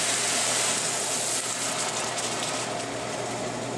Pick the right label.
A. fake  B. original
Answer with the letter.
B